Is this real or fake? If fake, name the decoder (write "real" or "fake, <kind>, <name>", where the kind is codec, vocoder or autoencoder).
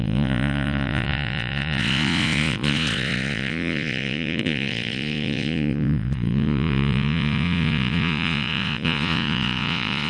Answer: fake, vocoder, Vocos